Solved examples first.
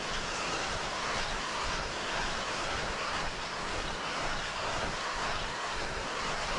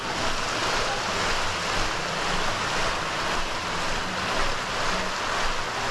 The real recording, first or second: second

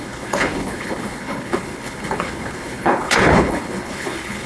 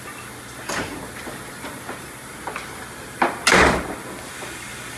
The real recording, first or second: second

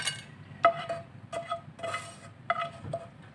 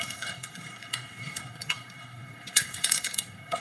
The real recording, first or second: first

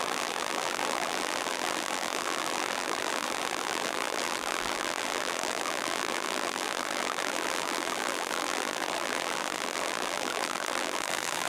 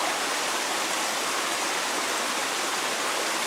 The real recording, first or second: second